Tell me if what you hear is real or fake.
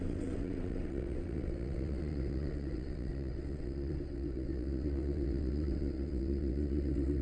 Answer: fake